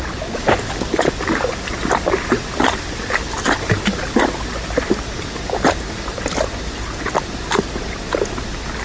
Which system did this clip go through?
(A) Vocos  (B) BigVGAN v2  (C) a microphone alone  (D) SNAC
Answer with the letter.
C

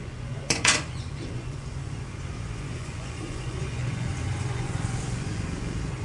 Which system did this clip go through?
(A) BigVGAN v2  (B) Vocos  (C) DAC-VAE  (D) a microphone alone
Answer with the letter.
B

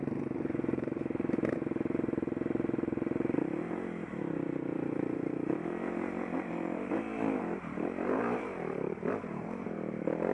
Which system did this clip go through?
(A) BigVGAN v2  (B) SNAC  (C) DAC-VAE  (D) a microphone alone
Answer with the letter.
A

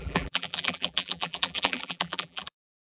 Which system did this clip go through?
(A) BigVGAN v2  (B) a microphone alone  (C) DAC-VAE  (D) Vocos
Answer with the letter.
A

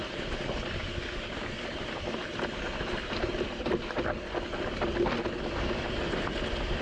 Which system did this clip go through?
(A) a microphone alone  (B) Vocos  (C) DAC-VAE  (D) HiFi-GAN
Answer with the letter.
A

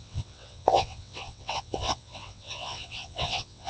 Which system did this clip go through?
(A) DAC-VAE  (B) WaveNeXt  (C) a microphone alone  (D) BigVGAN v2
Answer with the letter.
B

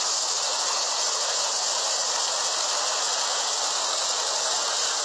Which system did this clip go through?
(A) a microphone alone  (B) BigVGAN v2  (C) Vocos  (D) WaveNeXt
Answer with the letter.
A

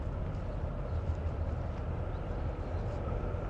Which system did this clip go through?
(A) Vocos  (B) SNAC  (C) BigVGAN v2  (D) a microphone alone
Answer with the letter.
D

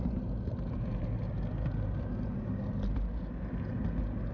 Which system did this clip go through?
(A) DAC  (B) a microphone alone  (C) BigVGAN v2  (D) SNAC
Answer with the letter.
B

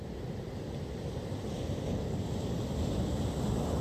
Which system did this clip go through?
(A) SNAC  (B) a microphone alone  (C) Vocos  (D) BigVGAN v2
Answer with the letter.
B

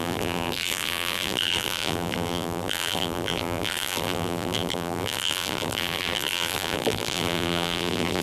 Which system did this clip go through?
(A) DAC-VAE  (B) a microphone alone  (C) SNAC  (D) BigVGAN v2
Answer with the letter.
D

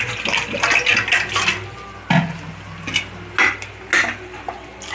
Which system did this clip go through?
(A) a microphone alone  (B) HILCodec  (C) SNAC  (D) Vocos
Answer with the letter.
A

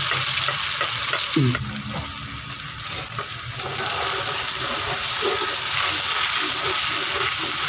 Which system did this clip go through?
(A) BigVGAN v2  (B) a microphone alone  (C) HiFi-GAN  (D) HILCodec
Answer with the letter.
B